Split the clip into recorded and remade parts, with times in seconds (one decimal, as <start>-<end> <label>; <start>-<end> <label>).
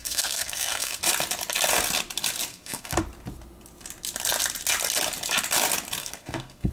0.0-1.0 remade; 1.0-2.5 recorded; 2.5-3.0 remade; 3.0-6.0 recorded; 6.0-6.7 remade